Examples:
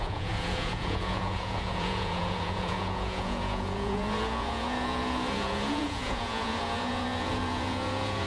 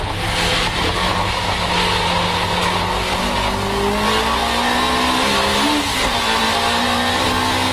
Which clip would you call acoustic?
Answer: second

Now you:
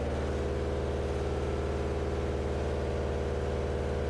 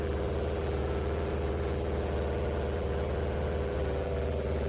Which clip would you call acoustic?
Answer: first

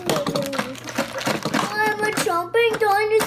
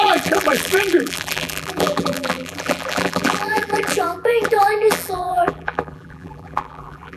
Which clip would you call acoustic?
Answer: first